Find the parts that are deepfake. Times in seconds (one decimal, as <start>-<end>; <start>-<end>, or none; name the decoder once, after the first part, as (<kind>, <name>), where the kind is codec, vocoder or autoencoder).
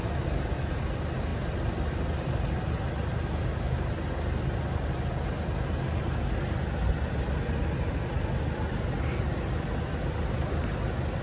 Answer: none